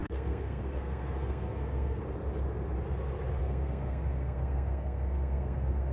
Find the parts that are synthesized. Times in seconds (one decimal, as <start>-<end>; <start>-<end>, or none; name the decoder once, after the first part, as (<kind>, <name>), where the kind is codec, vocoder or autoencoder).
0.0-2.0 (codec, SNAC); 3.4-5.9